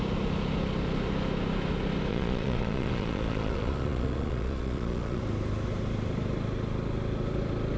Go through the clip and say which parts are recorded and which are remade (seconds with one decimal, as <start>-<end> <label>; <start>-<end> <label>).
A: 0.0-2.1 recorded; 2.1-5.2 remade; 5.2-7.8 recorded